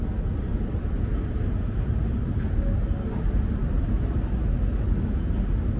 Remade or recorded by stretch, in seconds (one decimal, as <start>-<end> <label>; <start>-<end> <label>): 0.0-5.8 recorded